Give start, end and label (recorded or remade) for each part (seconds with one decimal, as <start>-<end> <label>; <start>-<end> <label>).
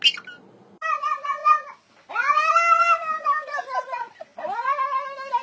0.0-2.8 recorded; 2.8-3.5 remade; 3.5-5.4 recorded